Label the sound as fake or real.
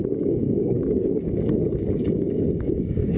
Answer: fake